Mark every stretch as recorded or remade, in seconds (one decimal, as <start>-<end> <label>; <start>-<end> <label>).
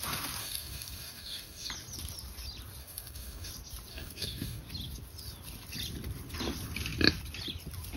0.0-0.4 recorded; 0.4-1.7 remade; 1.7-2.8 recorded; 2.8-3.5 remade; 3.5-3.9 recorded; 3.9-4.6 remade; 4.6-8.0 recorded